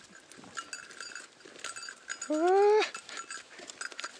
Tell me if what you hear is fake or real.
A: real